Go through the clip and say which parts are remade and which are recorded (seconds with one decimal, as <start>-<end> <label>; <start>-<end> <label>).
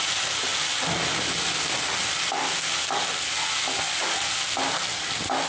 0.0-5.5 recorded